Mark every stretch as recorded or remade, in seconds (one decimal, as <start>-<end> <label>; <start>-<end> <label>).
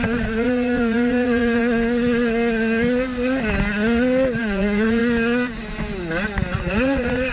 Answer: 0.0-1.6 remade; 1.6-4.4 recorded; 4.4-5.0 remade; 5.0-6.6 recorded; 6.6-7.3 remade